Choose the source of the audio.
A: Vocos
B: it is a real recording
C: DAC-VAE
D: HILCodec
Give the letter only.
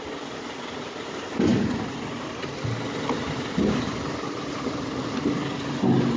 B